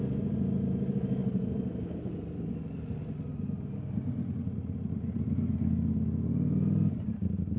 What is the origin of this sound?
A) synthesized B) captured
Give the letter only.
B